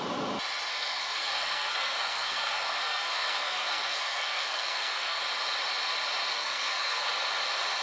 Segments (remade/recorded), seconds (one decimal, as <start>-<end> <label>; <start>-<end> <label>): 0.0-0.7 recorded; 0.7-5.2 remade; 5.2-6.3 recorded; 6.3-7.1 remade; 7.1-7.8 recorded